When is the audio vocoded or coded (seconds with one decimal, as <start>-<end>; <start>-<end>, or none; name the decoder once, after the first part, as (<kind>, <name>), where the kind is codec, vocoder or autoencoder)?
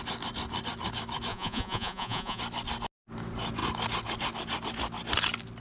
1.3-2.4 (vocoder, Vocos)